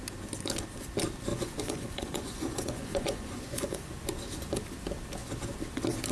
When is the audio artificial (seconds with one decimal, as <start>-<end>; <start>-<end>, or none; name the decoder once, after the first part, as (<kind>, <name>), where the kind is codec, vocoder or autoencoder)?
1.3-3.9 (vocoder, Vocos)